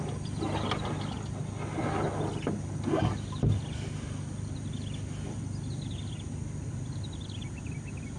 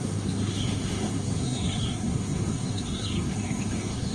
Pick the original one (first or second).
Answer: first